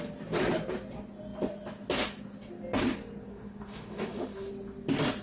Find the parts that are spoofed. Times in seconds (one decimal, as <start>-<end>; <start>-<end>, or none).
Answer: 3.3-4.5